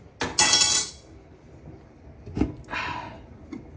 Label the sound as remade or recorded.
recorded